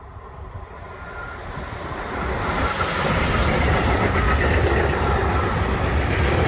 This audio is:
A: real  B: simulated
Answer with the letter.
A